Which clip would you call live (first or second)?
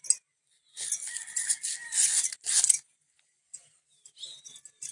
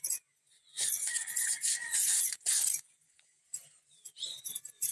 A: first